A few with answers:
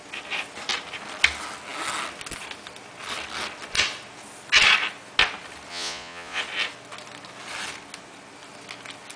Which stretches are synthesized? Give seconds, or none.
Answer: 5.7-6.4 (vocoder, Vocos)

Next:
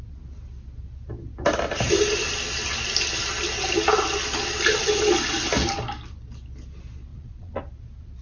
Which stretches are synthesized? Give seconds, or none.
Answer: 7.1-7.6 (vocoder, Vocos)

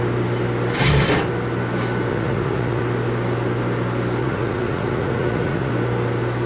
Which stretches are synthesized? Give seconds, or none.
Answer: 2.1-2.8 (vocoder, Vocos); 4.2-5.7

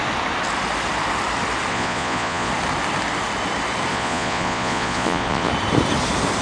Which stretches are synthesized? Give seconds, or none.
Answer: 1.7-2.5 (vocoder, Vocos); 3.9-5.5

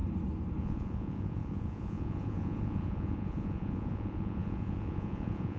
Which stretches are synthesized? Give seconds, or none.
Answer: 0.6-5.6 (vocoder, Vocos)

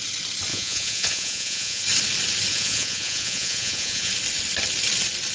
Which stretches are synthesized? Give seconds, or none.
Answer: 0.5-1.8 (vocoder, Vocos); 2.5-4.1

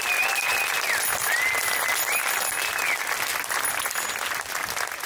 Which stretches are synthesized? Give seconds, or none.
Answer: none